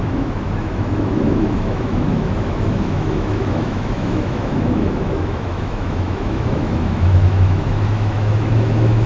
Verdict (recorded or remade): remade